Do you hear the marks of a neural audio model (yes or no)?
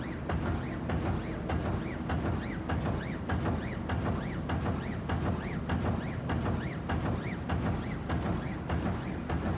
no